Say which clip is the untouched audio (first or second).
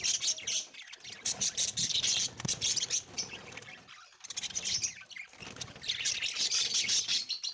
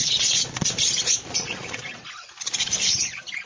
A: first